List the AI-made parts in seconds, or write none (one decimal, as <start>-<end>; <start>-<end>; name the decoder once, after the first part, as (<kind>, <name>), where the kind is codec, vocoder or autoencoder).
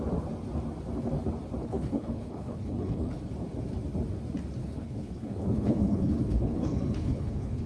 1.6-3.2 (codec, HILCodec); 4.6-7.7